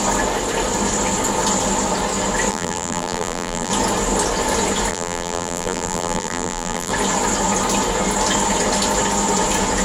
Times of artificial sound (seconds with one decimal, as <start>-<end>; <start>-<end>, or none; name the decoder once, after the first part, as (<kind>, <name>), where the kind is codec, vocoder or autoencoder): 2.5-3.7 (vocoder, BigVGAN v2); 4.9-6.9